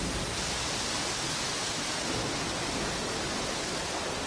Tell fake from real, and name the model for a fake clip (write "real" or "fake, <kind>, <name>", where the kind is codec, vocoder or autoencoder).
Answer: real